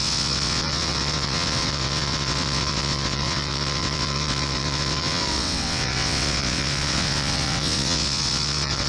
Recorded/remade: remade